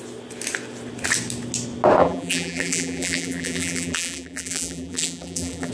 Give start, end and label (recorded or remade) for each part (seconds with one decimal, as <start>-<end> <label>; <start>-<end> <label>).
0.0-2.0 recorded; 2.0-5.7 remade